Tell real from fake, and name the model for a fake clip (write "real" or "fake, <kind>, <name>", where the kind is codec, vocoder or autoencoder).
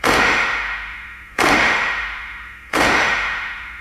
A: fake, autoencoder, DAC-VAE